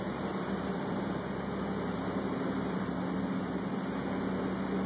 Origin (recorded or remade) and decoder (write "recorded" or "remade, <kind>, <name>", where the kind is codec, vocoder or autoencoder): recorded